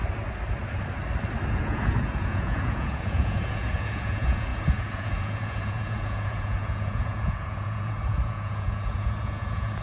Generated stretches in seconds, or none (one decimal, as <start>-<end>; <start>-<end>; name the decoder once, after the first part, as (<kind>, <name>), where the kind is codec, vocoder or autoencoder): 1.5-9.8 (vocoder, Vocos)